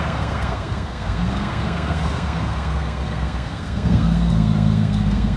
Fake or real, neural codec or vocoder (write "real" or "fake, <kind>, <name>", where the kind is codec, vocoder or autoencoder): fake, codec, SNAC